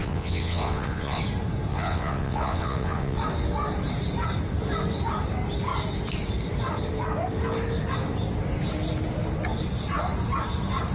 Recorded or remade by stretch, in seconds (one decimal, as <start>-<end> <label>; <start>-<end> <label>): 0.0-1.2 remade; 1.2-1.7 recorded; 1.7-3.2 remade; 3.2-10.9 recorded